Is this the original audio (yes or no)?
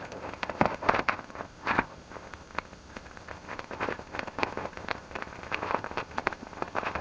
no